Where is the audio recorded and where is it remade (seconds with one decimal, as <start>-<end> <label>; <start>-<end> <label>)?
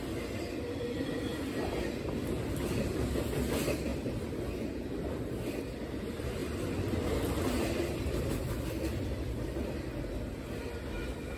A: 0.0-11.4 recorded